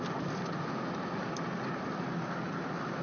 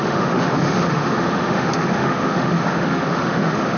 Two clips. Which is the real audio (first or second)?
first